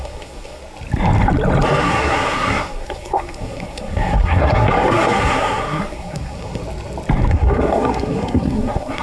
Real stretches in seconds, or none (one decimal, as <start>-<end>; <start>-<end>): 0.6-1.8; 6.6-7.3